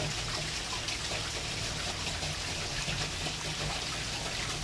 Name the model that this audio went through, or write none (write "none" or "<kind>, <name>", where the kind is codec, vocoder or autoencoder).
none